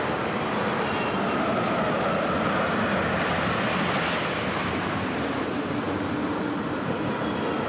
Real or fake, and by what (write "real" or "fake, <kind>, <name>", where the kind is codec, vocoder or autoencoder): real